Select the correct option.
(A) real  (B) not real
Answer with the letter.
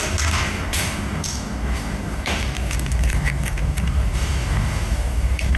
B